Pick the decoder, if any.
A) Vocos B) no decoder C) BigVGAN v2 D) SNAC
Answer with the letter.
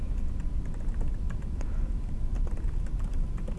C